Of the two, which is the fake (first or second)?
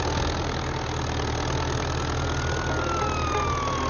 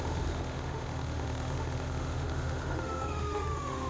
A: second